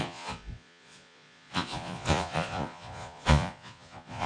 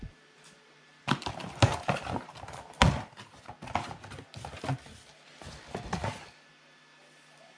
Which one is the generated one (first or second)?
first